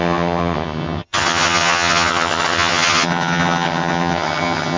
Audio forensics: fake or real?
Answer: fake